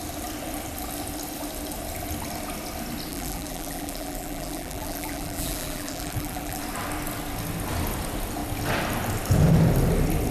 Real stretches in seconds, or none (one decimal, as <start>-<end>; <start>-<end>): 0.0-3.1; 6.6-10.3